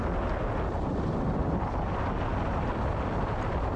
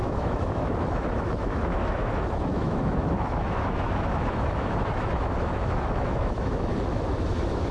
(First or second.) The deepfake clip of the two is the second